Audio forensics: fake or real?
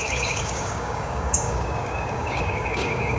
fake